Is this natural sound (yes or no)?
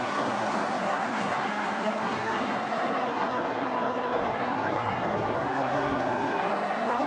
no